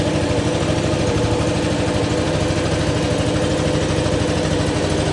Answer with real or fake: real